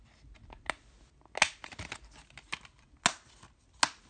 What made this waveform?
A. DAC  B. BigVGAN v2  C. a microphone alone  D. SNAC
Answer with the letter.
C